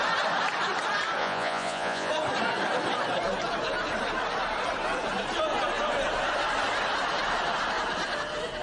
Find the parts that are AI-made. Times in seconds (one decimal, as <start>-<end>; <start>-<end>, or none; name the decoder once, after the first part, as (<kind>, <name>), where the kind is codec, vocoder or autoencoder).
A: 1.2-2.1 (vocoder, Vocos)